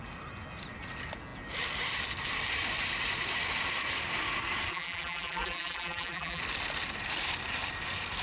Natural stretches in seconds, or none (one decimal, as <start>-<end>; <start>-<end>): 0.0-4.7; 6.4-8.2

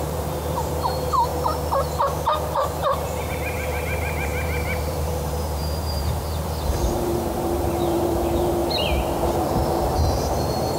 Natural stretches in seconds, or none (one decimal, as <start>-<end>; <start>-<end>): 1.3-3.3; 8.6-9.4